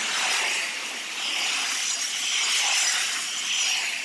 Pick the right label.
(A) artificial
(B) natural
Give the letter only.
B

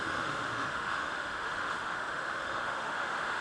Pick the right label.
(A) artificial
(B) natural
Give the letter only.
A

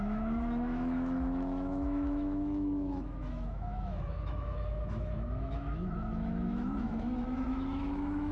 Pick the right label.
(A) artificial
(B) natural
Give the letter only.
A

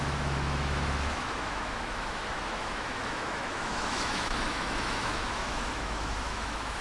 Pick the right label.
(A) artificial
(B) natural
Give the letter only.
A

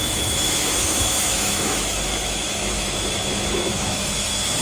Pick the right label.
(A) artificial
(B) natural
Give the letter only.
A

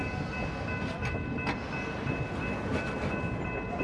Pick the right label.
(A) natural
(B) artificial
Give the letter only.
A